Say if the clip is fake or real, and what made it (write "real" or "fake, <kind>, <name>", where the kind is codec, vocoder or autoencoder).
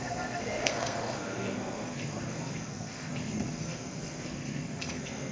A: fake, codec, SNAC